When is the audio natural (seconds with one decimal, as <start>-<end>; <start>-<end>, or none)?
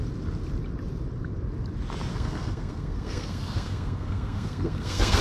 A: 0.0-2.1